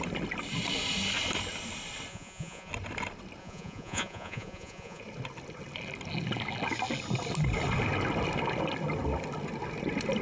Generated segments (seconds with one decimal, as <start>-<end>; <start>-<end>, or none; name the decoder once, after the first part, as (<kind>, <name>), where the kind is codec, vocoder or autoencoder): 2.1-2.7 (vocoder, Vocos); 3.4-5.0